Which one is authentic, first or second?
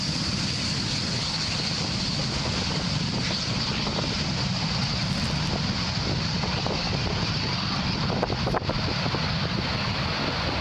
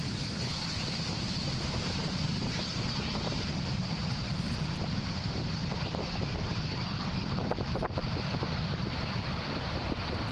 first